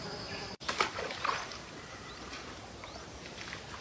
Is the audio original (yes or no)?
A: yes